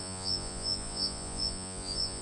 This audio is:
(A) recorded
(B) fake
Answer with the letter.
B